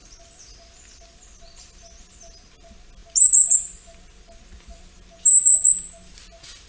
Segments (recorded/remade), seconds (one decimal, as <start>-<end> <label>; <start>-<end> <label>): 0.0-6.7 recorded